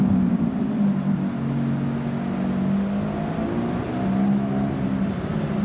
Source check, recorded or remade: recorded